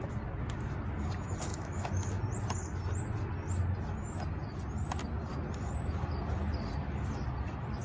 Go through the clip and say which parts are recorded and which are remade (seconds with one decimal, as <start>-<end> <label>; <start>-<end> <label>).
0.0-1.5 recorded; 1.5-2.1 remade; 2.1-7.8 recorded